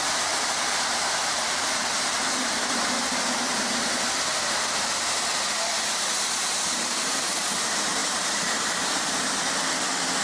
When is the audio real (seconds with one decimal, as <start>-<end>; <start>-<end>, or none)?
none